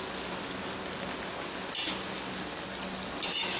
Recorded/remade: recorded